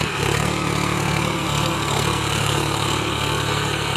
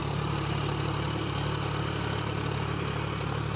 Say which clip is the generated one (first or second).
first